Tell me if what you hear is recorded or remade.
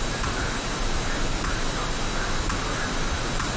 recorded